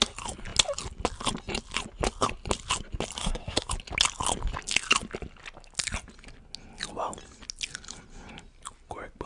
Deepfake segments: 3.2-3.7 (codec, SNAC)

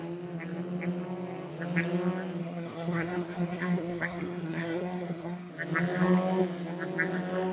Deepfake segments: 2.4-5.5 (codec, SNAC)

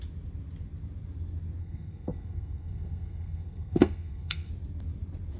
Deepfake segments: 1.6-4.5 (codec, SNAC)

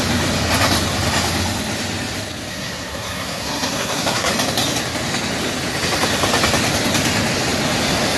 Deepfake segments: 2.5-4.3 (codec, SNAC)